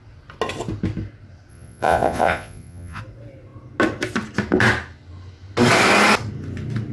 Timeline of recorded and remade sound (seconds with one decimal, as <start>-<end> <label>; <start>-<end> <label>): 0.0-1.5 recorded; 1.5-3.0 remade; 3.0-6.9 recorded